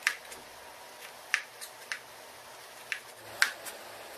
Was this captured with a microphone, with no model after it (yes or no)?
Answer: yes